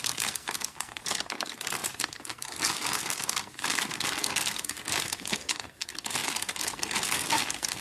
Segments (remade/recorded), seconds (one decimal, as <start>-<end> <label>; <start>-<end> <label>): 0.0-7.8 remade